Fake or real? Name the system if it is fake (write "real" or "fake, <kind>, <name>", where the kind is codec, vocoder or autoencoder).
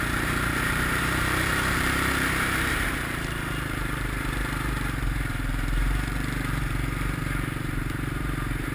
fake, vocoder, BigVGAN v2